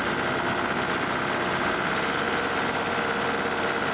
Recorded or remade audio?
recorded